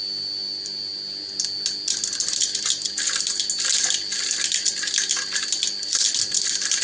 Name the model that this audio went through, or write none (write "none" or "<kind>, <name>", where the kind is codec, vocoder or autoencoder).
none